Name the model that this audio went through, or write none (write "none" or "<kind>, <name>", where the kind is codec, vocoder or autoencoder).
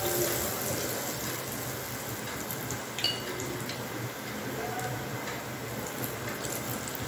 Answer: none